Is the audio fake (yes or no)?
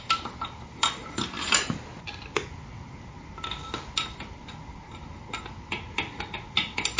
no